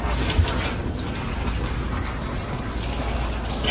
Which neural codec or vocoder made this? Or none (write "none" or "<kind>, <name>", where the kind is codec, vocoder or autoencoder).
none